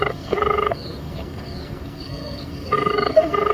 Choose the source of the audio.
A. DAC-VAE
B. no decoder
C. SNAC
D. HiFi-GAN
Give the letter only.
C